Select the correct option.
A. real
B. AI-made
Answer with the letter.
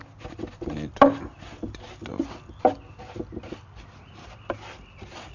A